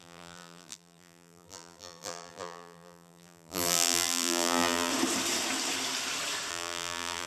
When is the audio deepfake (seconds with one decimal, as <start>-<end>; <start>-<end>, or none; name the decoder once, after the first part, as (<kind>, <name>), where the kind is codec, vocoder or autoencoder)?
0.0-4.9 (vocoder, BigVGAN v2); 6.5-7.3